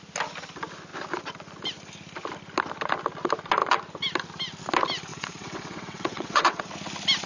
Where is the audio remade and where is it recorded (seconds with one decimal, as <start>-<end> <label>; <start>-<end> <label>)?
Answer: 0.0-5.1 recorded; 5.1-6.7 remade; 6.7-7.3 recorded